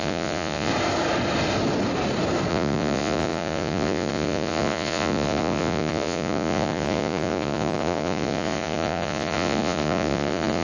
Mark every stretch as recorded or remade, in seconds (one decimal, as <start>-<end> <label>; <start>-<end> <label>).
0.0-0.7 remade; 0.7-2.5 recorded; 2.5-10.6 remade